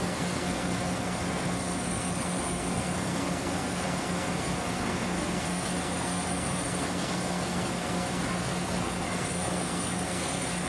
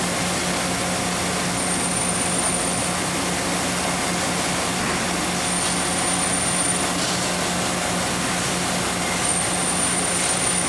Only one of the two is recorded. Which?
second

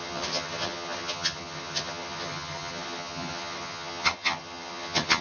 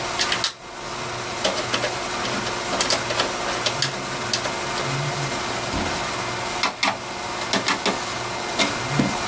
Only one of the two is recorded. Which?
second